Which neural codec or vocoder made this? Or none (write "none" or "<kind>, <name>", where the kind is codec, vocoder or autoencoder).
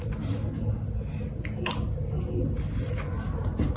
none